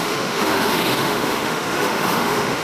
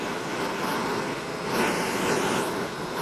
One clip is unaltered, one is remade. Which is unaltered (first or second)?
second